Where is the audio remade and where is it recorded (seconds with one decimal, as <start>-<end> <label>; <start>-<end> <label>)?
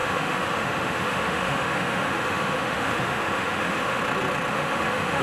0.0-4.0 remade; 4.0-4.5 recorded; 4.5-5.2 remade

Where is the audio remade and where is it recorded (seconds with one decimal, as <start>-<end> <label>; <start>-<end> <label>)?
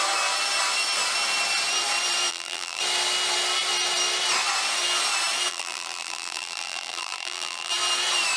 0.0-2.3 recorded; 2.3-2.8 remade; 2.8-5.5 recorded; 5.5-7.7 remade; 7.7-8.4 recorded